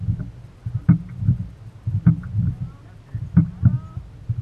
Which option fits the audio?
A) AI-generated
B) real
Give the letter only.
B